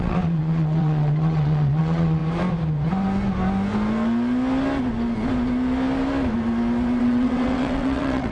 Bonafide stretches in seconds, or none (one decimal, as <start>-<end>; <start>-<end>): 2.2-7.0